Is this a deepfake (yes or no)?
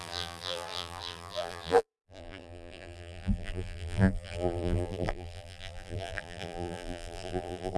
yes